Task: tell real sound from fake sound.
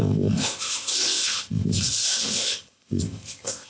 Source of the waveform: fake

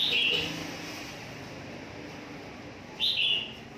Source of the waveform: real